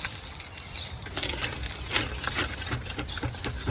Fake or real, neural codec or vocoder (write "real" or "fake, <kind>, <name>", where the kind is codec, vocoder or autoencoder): real